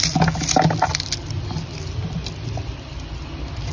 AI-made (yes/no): no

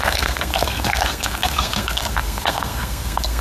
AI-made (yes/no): yes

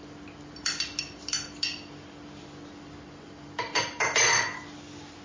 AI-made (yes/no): no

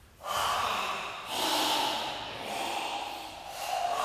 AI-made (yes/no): no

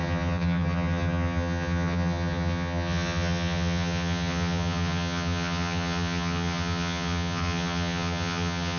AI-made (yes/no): yes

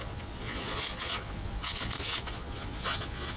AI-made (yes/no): yes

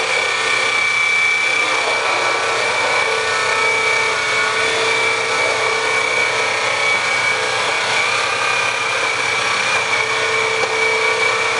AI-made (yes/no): no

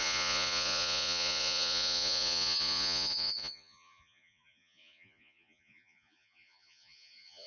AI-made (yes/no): yes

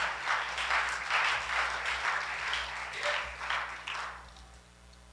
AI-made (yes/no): no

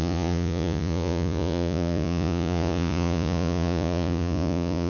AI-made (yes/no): yes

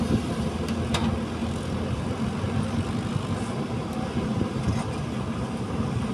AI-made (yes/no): no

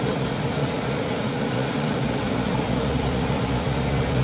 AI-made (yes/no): yes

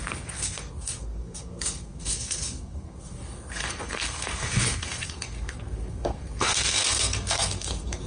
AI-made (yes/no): yes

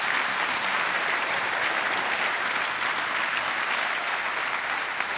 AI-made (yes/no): no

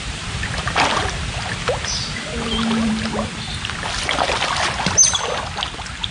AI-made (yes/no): no